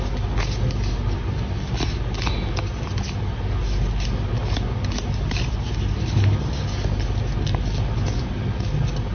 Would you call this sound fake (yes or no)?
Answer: no